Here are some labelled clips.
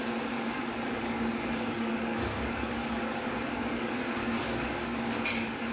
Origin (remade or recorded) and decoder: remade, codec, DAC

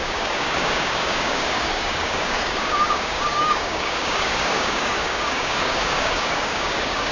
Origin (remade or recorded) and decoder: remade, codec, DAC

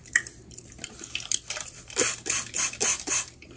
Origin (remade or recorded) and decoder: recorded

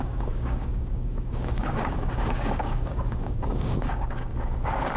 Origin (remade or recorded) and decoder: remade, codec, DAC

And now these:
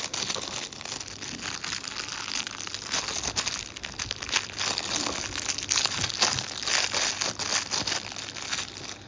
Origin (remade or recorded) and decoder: recorded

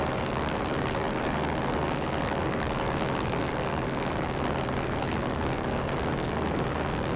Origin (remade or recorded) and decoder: remade, codec, DAC